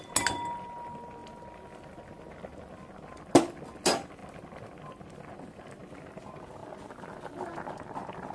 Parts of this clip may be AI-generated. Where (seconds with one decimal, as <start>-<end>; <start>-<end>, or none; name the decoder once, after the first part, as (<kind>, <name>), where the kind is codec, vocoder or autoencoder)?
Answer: none